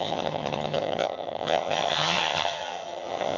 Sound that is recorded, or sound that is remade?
remade